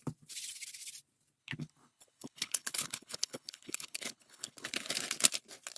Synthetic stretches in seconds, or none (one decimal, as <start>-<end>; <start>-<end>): 1.4-4.9